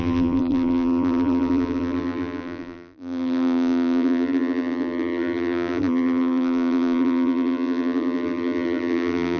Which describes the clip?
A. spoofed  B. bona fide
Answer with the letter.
A